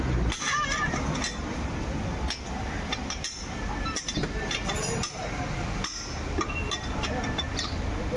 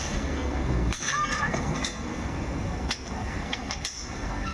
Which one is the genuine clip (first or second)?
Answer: first